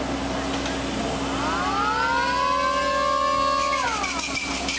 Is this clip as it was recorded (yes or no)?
yes